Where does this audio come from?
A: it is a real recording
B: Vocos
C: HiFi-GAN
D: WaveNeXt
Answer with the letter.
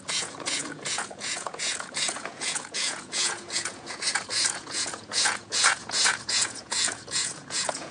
B